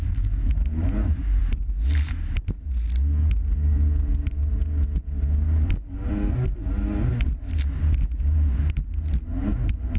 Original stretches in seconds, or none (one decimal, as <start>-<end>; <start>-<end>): 0.0-10.0